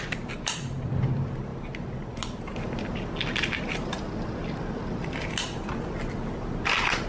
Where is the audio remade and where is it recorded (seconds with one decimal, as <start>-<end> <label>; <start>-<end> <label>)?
0.0-7.1 recorded